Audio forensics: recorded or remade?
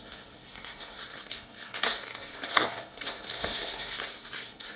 remade